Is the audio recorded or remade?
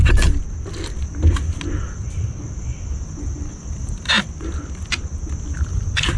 recorded